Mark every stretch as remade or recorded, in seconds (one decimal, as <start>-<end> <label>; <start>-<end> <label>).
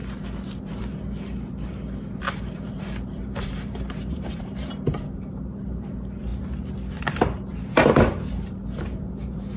0.0-0.6 recorded; 0.6-6.3 remade; 6.3-7.0 recorded; 7.0-9.6 remade